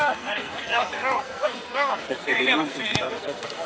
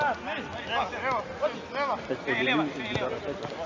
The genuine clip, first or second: second